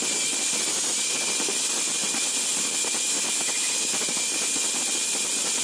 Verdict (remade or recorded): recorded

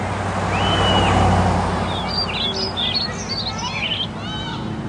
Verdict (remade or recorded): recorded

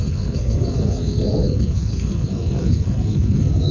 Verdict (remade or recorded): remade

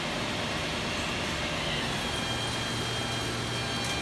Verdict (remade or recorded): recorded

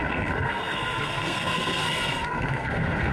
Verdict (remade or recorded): remade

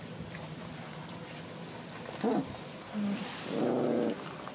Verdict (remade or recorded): recorded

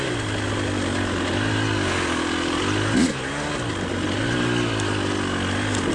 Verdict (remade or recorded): recorded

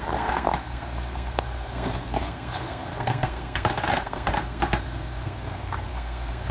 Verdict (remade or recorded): remade